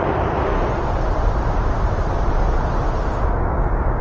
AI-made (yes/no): no